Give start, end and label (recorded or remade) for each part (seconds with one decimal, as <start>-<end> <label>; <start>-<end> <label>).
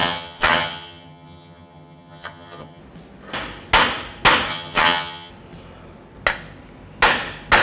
0.0-2.8 remade; 2.8-4.5 recorded; 4.5-5.3 remade; 5.3-7.6 recorded